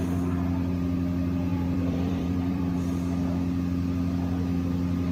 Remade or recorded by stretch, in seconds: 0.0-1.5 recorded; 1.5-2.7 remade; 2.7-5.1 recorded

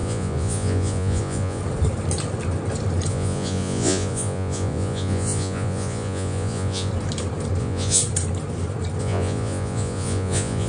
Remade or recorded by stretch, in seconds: 0.0-1.6 remade; 1.6-3.1 recorded; 3.1-6.9 remade; 6.9-7.6 recorded; 7.6-8.0 remade; 8.0-9.0 recorded; 9.0-10.7 remade

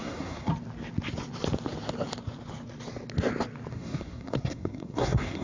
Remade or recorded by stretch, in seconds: 0.0-0.5 remade; 0.5-3.7 recorded; 3.7-5.4 remade

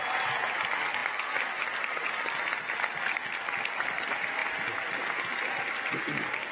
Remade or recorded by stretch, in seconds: 0.0-6.5 recorded

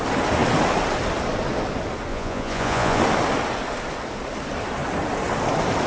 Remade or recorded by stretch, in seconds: 0.0-2.1 recorded; 2.1-3.0 remade; 3.0-5.9 recorded

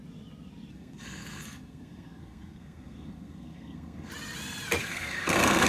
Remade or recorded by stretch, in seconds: 0.0-0.7 recorded; 0.7-4.1 remade; 4.1-4.8 recorded; 4.8-5.7 remade

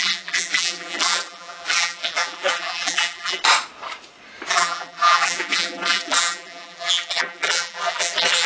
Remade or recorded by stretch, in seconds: 0.0-3.4 remade; 3.4-4.5 recorded; 4.5-8.5 remade

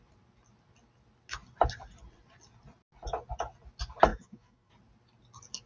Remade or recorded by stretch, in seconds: 0.0-4.1 recorded; 4.1-4.7 remade; 4.7-5.7 recorded